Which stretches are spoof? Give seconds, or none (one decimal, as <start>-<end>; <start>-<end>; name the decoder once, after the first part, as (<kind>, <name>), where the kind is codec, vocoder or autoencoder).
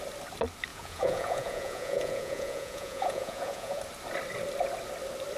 0.7-3.8 (vocoder, Vocos)